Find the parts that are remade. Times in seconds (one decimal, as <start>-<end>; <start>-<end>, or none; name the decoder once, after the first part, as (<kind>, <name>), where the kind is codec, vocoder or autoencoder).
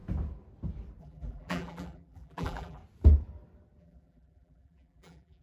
1.0-2.8 (vocoder, BigVGAN v2); 3.8-5.4